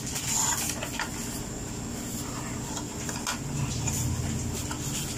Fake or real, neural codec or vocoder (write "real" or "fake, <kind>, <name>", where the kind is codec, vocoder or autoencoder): real